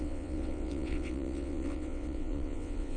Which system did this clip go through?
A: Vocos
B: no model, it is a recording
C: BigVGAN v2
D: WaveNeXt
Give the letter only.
D